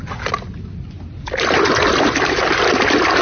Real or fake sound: fake